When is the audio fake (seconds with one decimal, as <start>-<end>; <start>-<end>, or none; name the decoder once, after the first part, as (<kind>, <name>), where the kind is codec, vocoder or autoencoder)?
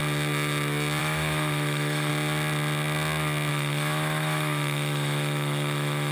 1.0-2.1 (autoencoder, DAC-VAE); 3.5-6.1